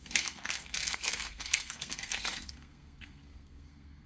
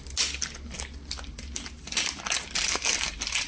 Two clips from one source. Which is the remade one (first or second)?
first